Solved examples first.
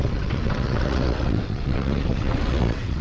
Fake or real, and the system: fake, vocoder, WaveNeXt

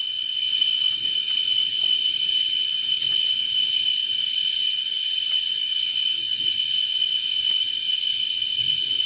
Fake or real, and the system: fake, vocoder, WaveNeXt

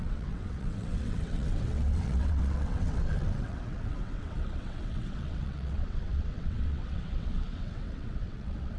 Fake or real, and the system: fake, vocoder, WaveNeXt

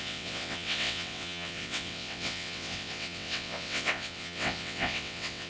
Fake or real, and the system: fake, vocoder, WaveNeXt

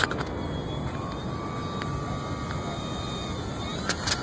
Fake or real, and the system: real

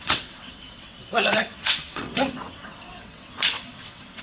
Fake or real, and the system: fake, vocoder, WaveNeXt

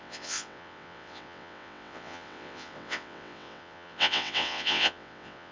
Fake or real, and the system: fake, vocoder, WaveNeXt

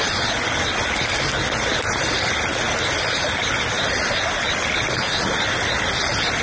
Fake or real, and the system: real